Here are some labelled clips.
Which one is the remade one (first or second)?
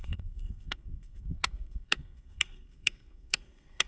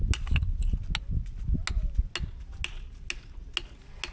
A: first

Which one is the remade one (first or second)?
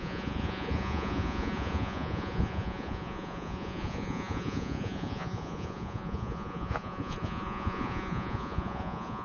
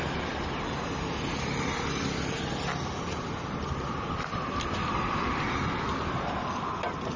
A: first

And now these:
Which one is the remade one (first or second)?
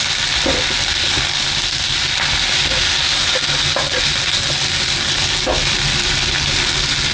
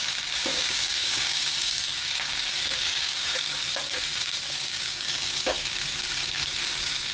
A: second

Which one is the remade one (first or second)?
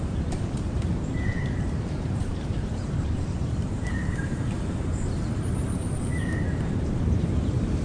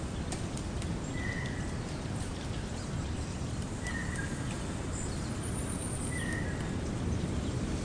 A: first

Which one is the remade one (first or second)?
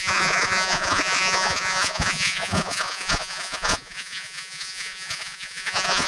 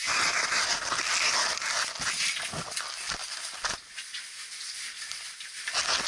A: first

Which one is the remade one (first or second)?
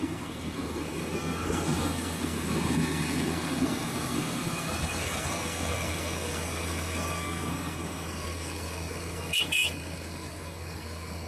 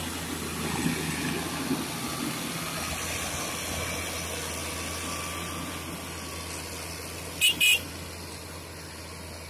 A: first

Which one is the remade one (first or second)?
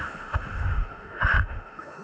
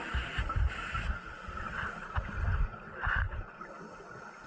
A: first